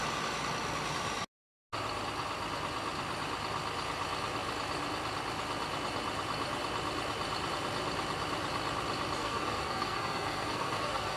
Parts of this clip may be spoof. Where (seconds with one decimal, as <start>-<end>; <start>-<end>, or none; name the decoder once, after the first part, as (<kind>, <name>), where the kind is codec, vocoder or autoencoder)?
9.2-11.2 (codec, SNAC)